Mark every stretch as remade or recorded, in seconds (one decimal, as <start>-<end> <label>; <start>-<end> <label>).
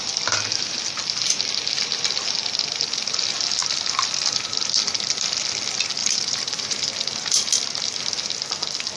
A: 0.0-6.0 recorded; 6.0-6.8 remade; 6.8-9.0 recorded